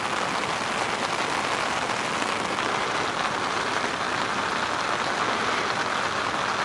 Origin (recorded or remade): recorded